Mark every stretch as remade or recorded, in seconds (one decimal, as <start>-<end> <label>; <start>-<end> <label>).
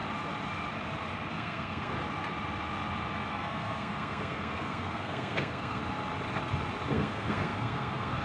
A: 0.0-1.3 recorded; 1.3-1.9 remade; 1.9-3.3 recorded; 3.3-5.8 remade; 5.8-6.9 recorded; 6.9-8.2 remade